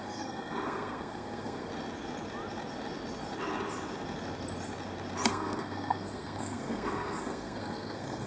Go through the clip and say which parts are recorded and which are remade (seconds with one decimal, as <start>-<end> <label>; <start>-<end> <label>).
0.0-1.7 remade; 1.7-5.3 recorded; 5.3-8.3 remade